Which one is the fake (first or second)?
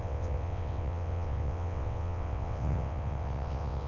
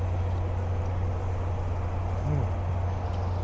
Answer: first